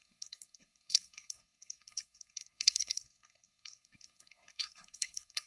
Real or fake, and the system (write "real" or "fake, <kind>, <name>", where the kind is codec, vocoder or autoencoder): fake, codec, SNAC